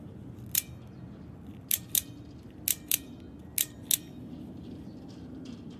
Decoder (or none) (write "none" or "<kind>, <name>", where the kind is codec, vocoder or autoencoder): none